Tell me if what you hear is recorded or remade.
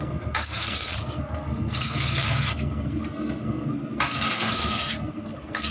remade